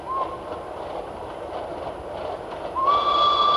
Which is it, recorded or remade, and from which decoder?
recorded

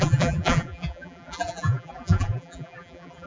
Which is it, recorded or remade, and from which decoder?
remade, vocoder, BigVGAN v2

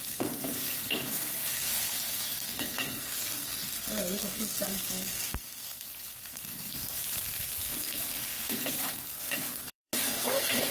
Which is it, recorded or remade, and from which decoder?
remade, codec, SNAC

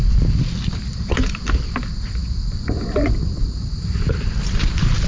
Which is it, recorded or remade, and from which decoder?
recorded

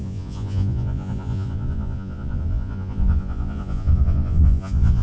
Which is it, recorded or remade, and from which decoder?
remade, vocoder, Vocos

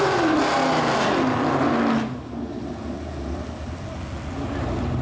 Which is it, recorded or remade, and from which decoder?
recorded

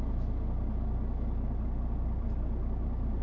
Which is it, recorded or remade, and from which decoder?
recorded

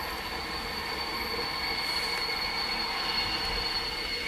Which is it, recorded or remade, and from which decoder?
recorded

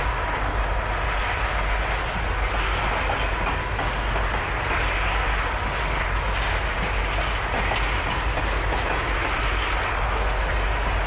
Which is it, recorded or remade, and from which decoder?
recorded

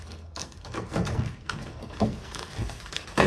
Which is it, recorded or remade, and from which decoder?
remade, codec, SNAC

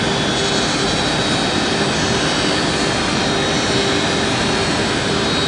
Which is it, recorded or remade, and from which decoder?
recorded